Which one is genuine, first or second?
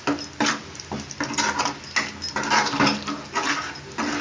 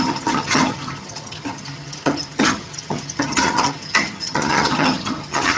first